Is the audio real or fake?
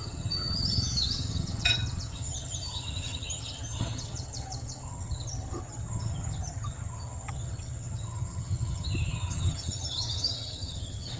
fake